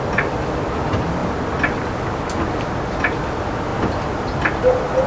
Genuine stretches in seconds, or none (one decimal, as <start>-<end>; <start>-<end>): 0.0-5.1